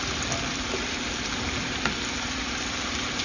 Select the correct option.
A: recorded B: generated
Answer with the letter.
A